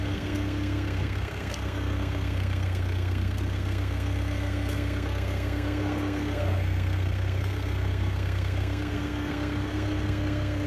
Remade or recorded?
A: remade